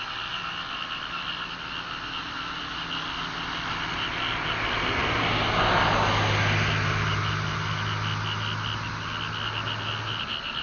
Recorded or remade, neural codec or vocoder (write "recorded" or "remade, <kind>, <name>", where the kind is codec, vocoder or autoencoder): recorded